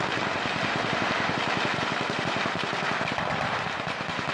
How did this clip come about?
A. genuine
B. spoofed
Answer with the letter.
A